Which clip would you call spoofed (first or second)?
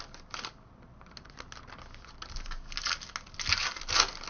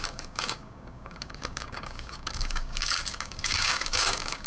second